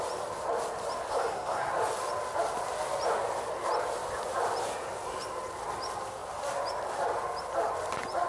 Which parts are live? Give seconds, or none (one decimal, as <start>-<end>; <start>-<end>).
0.0-1.1; 1.7-8.3